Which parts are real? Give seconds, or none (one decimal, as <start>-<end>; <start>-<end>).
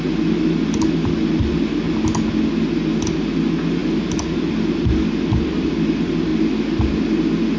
0.0-7.6